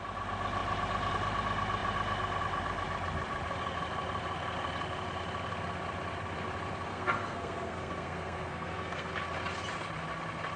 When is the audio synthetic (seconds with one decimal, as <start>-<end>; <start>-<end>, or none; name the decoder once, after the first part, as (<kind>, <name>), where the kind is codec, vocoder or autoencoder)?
6.9-9.1 (codec, SNAC)